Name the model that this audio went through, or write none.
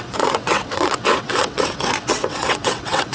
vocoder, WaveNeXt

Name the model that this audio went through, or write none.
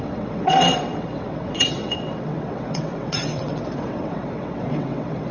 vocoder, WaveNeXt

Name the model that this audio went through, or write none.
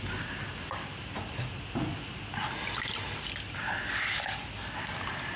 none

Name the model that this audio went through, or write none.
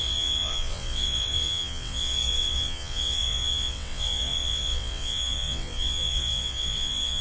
vocoder, WaveNeXt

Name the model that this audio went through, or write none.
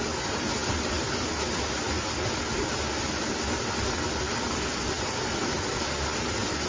none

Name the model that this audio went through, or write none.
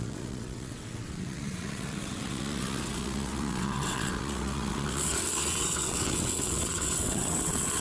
vocoder, WaveNeXt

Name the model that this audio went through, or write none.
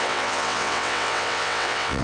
vocoder, WaveNeXt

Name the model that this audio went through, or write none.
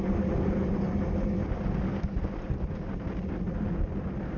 none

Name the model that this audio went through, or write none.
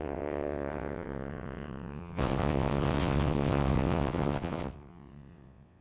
vocoder, WaveNeXt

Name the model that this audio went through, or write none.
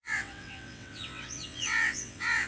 vocoder, WaveNeXt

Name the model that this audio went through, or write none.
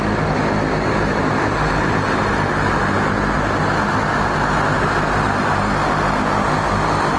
none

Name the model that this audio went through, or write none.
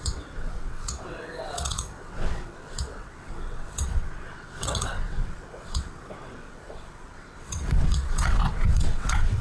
vocoder, WaveNeXt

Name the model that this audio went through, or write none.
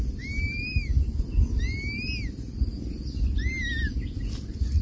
none